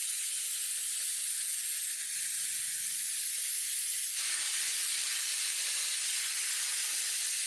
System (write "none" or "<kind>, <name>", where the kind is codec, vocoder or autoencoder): none